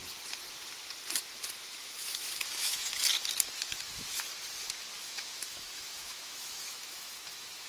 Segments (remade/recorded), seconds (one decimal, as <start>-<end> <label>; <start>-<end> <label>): 0.0-1.7 recorded; 1.7-3.0 remade; 3.0-3.6 recorded; 3.6-4.3 remade; 4.3-5.0 recorded; 5.0-7.7 remade